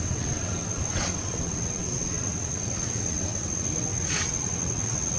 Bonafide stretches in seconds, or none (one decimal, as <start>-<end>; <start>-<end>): none